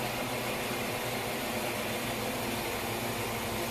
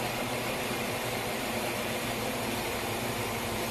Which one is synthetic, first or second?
second